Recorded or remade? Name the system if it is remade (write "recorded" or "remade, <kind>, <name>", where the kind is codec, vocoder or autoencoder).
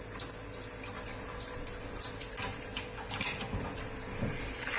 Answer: recorded